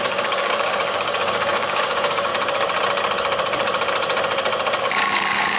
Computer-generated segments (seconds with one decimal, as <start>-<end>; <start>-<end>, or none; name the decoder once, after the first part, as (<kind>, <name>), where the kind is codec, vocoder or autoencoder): 0.0-2.3 (codec, DAC); 4.8-5.6